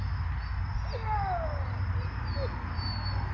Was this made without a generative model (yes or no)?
yes